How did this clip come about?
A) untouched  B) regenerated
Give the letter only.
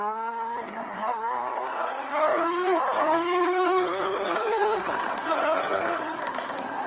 B